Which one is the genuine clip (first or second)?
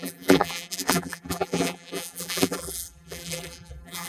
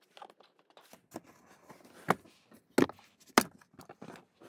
second